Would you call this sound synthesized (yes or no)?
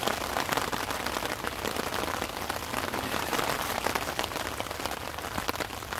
no